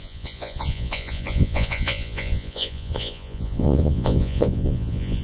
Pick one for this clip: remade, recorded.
remade